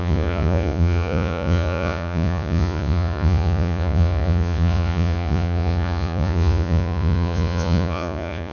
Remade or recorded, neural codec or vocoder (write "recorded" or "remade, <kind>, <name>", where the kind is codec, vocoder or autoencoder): remade, vocoder, Vocos